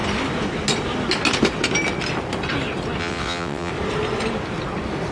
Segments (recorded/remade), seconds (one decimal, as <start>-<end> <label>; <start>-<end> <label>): 0.0-3.0 recorded; 3.0-3.7 remade; 3.7-5.1 recorded

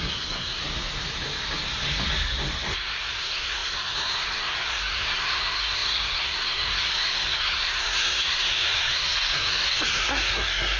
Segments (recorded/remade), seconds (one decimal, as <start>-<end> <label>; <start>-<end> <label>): 0.0-0.6 remade; 0.6-2.6 recorded; 2.6-10.8 remade

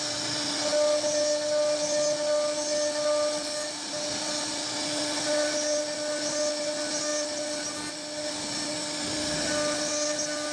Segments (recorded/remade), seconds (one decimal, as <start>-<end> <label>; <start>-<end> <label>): 0.0-10.5 recorded